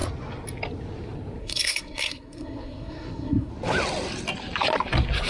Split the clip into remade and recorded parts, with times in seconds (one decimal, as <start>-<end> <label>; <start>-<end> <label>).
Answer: 0.0-1.4 recorded; 1.4-3.5 remade; 3.5-5.3 recorded